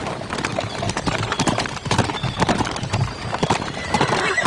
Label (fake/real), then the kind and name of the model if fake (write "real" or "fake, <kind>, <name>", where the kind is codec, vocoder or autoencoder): fake, vocoder, BigVGAN v2